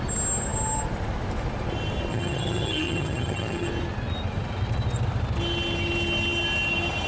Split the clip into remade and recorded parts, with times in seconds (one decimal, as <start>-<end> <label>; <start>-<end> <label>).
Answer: 0.0-2.1 recorded; 2.1-3.7 remade; 3.7-7.1 recorded